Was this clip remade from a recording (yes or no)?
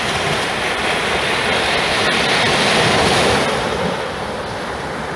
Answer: no